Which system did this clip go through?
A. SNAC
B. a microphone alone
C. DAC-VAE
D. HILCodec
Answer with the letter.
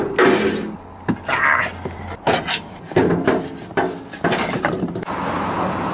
B